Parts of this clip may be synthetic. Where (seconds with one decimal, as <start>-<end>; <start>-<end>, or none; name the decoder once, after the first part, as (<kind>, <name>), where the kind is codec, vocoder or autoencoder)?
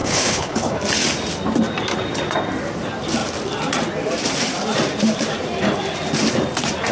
0.0-0.8 (codec, HILCodec)